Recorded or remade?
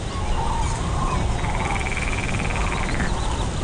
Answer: recorded